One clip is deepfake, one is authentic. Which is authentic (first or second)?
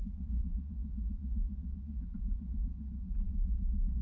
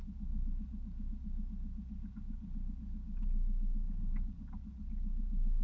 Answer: second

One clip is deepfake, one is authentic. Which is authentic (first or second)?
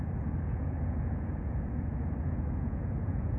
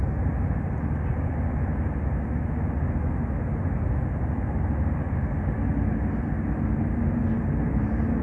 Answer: second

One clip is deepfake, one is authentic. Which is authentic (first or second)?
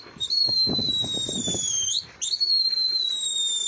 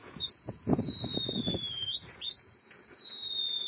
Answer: first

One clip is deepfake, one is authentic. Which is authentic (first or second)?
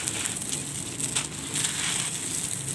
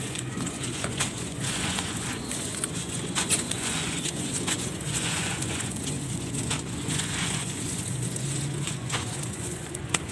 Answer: first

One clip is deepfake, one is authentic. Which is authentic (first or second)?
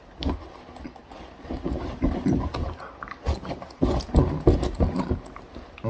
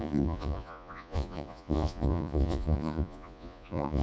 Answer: first